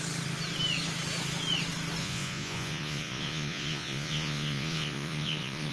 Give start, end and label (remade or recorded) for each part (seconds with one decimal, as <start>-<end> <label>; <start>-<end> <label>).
0.0-2.0 recorded; 2.0-5.7 remade